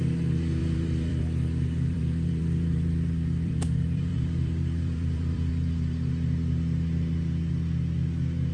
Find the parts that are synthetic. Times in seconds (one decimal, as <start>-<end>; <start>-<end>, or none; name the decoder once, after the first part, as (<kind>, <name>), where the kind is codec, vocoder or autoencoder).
0.6-5.5 (vocoder, BigVGAN v2)